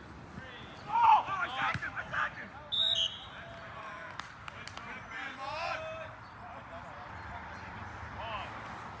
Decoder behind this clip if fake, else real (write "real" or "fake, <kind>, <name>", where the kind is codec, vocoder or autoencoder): real